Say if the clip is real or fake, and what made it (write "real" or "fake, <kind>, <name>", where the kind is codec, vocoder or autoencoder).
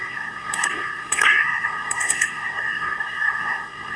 fake, codec, SNAC